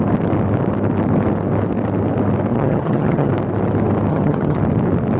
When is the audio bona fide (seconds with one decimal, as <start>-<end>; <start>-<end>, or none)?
0.0-2.5; 3.3-4.1; 4.6-5.2